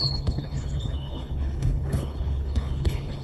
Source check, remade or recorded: remade